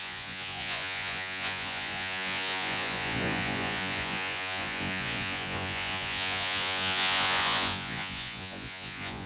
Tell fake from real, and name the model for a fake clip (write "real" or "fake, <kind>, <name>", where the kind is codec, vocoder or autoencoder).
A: fake, vocoder, Vocos